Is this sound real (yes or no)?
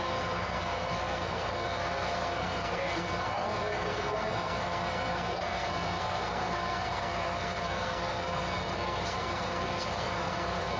no